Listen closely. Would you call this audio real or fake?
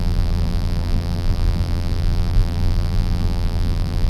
fake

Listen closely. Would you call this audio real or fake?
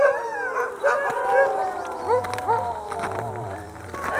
real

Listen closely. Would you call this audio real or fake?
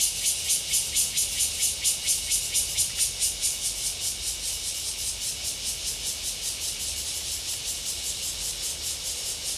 real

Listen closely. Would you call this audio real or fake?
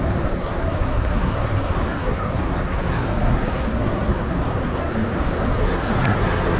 fake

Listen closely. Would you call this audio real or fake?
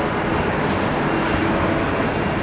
real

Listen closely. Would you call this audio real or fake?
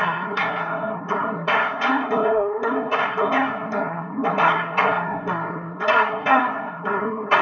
fake